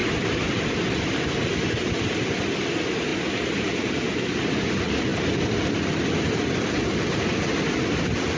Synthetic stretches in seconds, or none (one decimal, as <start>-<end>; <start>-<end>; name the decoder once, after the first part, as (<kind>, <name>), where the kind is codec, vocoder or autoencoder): none